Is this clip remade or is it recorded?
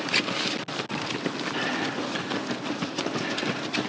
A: recorded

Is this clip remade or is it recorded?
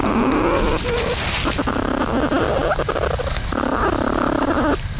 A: recorded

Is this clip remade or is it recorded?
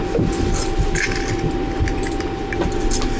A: recorded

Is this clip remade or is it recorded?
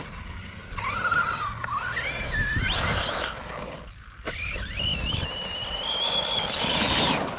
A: recorded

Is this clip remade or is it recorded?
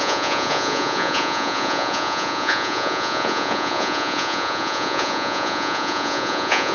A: remade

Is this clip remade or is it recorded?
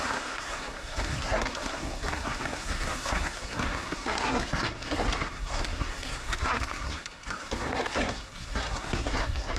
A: remade